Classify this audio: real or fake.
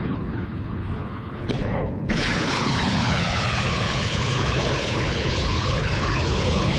fake